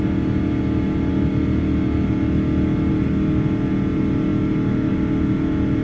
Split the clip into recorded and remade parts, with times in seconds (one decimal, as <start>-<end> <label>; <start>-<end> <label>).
0.0-5.8 recorded